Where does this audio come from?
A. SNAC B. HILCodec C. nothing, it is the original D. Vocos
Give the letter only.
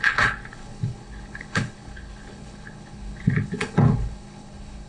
B